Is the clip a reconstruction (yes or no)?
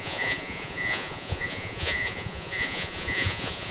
yes